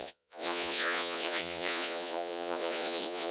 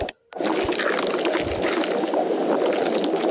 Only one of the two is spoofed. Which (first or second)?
first